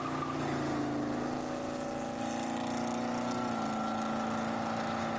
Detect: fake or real real